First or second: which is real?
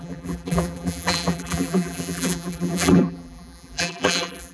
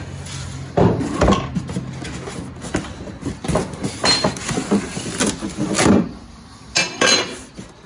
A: second